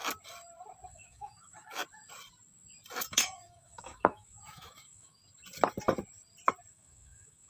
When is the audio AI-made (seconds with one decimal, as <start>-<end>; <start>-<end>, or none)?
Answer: 0.9-1.8; 3.1-5.2; 6.7-7.5